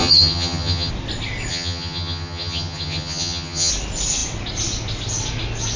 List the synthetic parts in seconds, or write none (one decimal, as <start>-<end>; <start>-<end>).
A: 0.0-0.9; 1.5-3.7